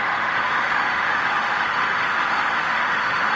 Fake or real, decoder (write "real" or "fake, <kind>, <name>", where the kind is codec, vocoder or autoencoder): fake, autoencoder, DAC-VAE